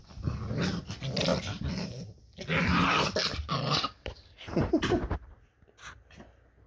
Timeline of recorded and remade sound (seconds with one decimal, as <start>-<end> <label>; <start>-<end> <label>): 0.0-0.8 remade; 0.8-1.3 recorded; 1.3-5.3 remade; 5.3-6.7 recorded